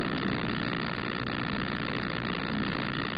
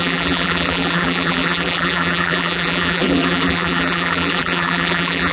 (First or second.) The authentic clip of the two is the first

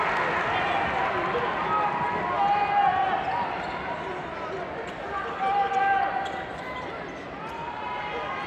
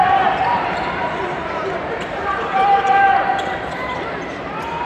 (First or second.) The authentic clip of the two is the first